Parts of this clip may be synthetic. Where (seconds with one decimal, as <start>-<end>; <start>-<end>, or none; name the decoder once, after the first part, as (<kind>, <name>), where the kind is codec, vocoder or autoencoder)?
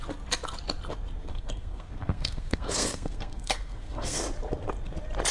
1.3-4.2 (codec, SNAC)